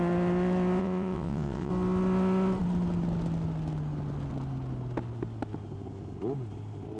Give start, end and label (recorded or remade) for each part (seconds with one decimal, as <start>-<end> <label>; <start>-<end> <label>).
0.0-0.8 recorded; 0.8-1.7 remade; 1.7-7.0 recorded